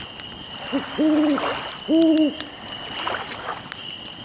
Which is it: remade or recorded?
recorded